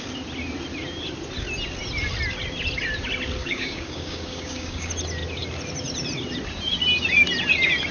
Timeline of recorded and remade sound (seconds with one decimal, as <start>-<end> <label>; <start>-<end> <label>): 0.0-3.4 recorded; 3.4-4.9 remade; 4.9-7.9 recorded